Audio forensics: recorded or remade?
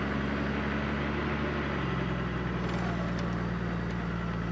recorded